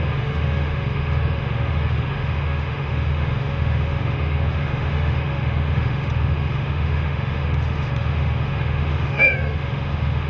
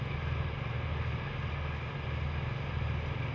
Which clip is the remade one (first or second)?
first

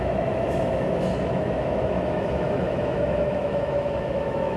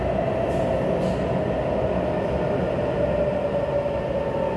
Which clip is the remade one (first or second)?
first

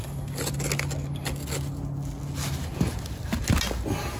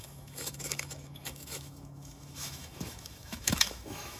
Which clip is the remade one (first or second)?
second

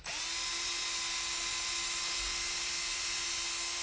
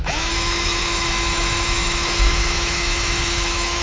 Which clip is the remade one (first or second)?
second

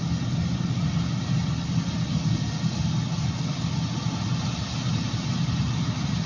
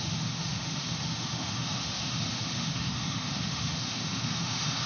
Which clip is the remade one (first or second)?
second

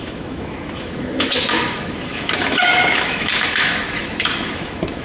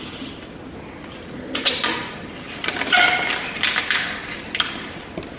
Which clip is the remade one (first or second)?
first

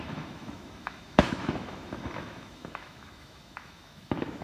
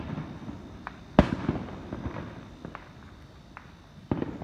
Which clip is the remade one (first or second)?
first